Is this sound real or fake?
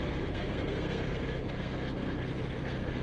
fake